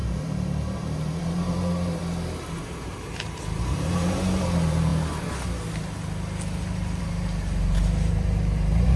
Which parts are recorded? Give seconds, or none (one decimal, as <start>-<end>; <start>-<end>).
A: 2.0-2.8; 4.9-7.0